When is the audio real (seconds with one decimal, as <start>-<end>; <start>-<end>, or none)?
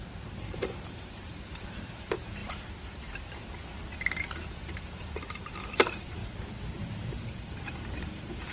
2.4-4.5; 6.2-7.1